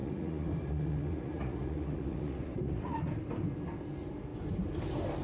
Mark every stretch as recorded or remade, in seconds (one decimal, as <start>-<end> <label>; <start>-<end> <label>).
0.0-3.1 remade; 3.1-5.2 recorded